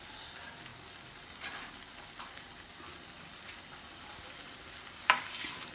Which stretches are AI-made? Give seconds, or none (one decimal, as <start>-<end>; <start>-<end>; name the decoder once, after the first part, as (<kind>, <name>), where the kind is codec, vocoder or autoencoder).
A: none